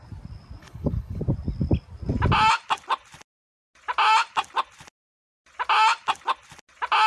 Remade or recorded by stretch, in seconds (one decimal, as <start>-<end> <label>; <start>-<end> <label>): 0.0-0.6 recorded; 0.6-1.2 remade; 1.2-7.1 recorded